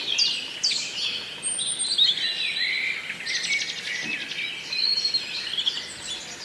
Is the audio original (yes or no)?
yes